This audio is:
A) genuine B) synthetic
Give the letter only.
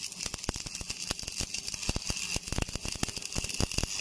A